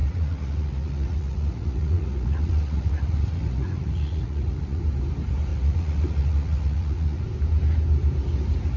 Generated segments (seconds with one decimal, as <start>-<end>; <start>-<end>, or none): 0.0-4.8; 5.5-7.2